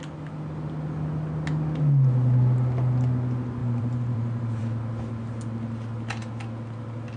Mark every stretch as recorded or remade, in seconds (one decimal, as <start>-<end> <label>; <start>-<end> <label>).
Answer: 0.0-3.6 recorded; 3.6-4.6 remade; 4.6-7.2 recorded